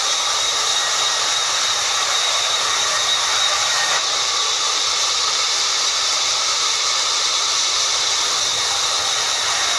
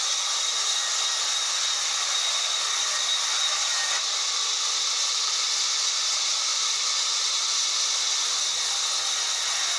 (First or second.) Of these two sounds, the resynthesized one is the first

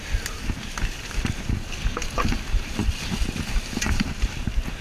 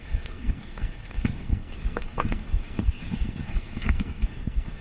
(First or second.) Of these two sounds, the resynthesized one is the second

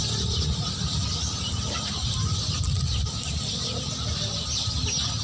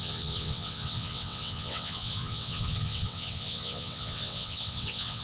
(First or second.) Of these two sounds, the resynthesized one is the second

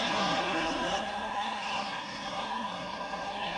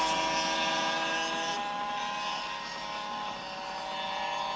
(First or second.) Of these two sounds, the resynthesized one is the first